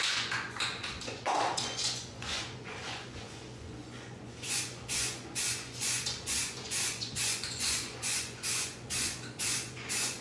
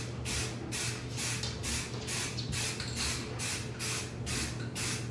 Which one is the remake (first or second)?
first